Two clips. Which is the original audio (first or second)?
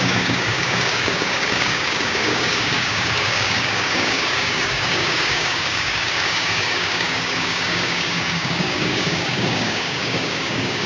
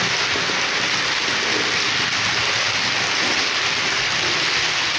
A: second